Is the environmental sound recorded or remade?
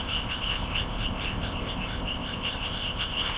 remade